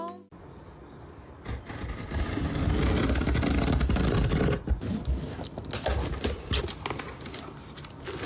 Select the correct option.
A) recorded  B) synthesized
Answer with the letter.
A